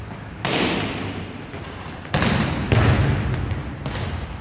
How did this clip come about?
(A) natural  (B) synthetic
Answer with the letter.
A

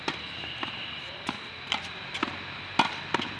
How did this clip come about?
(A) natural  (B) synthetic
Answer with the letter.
A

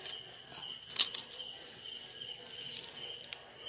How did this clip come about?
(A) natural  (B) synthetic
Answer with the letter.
A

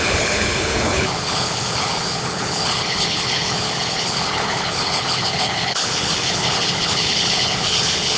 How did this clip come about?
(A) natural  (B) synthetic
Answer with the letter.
B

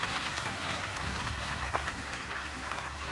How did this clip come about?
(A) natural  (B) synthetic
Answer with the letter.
B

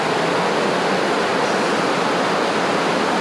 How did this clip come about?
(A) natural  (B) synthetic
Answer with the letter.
A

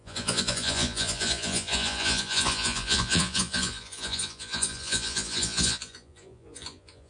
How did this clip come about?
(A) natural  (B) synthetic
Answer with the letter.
B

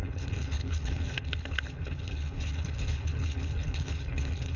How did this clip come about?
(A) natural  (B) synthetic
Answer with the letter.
B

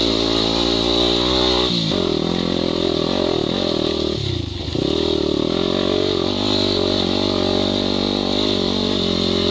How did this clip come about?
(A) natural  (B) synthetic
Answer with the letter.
A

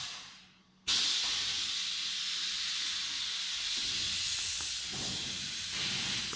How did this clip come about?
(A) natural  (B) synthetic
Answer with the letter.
A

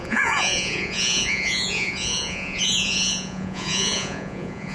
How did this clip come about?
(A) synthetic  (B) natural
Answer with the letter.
A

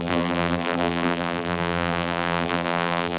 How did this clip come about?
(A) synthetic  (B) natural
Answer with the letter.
A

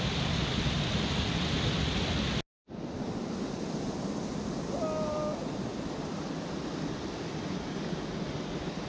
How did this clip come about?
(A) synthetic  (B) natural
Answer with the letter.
B